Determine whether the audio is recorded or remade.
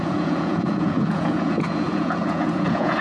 remade